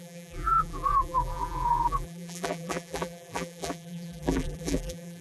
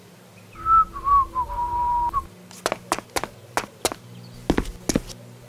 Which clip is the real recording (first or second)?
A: second